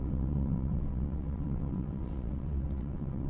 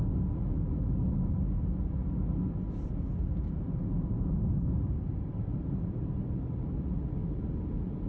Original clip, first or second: second